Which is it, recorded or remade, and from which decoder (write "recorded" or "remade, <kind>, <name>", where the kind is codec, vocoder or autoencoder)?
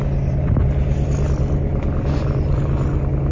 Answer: recorded